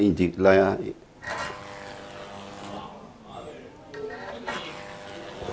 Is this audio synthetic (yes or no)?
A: no